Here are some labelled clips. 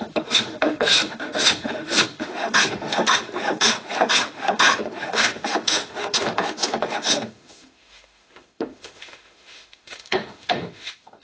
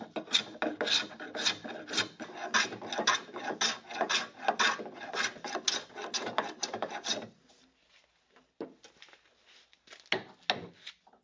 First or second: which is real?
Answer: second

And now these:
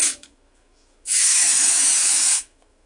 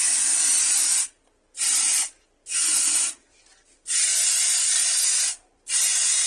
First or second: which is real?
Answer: second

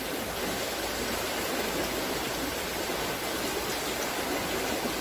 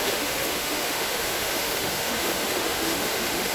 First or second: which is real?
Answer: first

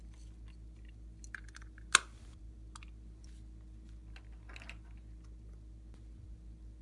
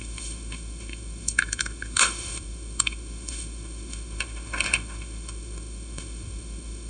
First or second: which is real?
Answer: first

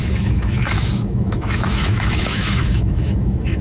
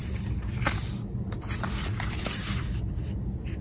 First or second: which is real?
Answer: second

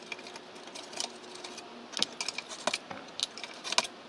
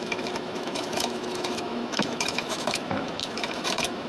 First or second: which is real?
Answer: first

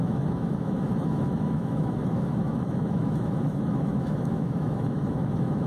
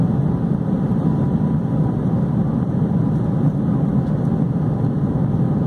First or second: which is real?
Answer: second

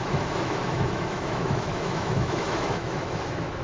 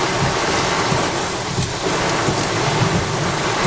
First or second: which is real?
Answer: second